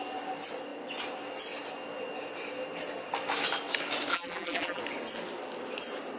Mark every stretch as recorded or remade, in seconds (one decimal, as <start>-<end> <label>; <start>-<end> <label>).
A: 0.0-4.1 recorded; 4.1-4.8 remade; 4.8-6.2 recorded